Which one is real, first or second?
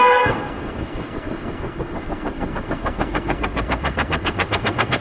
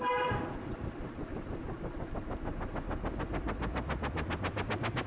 second